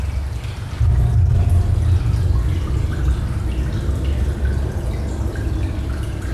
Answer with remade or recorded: recorded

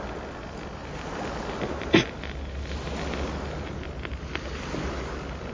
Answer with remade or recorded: recorded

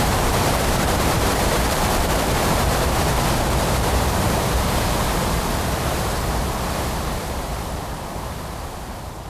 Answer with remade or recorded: remade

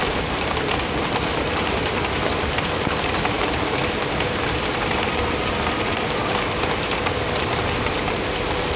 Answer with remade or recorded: remade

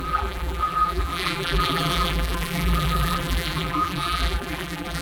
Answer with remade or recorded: remade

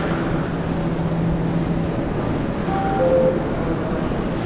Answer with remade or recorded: recorded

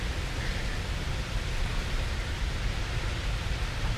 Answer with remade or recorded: recorded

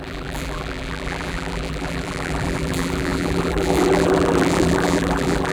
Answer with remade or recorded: remade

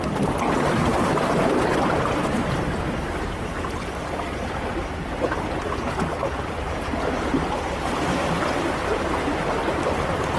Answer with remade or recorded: recorded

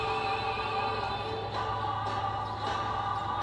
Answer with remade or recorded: recorded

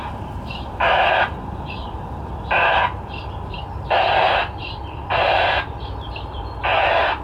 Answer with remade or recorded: recorded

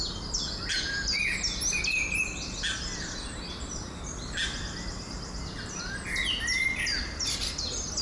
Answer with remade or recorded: recorded